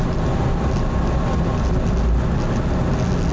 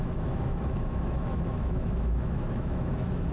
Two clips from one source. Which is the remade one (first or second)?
second